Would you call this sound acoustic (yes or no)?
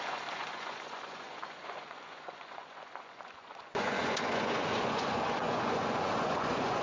no